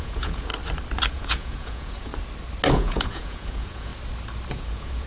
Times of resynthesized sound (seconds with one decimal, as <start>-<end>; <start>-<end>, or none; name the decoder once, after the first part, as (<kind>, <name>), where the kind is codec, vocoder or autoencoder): 0.0-0.5 (vocoder, Vocos); 1.1-2.1; 2.7-3.9; 4.5-5.1